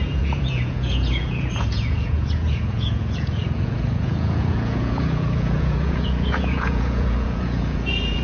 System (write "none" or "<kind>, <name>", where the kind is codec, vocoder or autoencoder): vocoder, Vocos